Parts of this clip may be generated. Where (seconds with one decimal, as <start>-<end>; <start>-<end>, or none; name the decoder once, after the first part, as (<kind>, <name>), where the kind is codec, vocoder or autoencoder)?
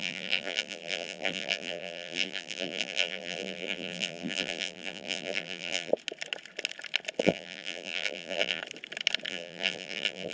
0.0-5.9 (vocoder, BigVGAN v2); 7.2-8.6; 9.3-10.3